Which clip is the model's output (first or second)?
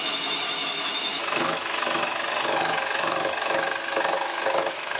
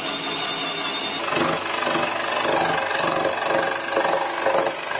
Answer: first